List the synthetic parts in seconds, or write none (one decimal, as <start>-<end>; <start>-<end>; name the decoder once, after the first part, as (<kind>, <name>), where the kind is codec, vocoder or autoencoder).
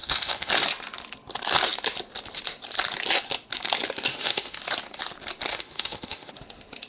0.0-0.5 (autoencoder, DAC-VAE); 4.1-4.6; 5.5-6.3